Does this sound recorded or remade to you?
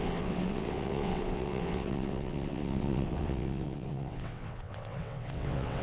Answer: remade